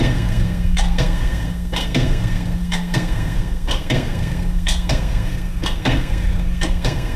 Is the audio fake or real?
fake